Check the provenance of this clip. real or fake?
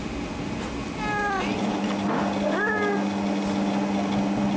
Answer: real